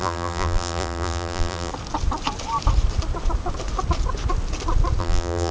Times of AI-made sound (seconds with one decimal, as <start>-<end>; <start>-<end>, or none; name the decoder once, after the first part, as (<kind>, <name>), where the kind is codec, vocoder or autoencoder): 0.0-1.7 (vocoder, BigVGAN v2); 5.0-5.5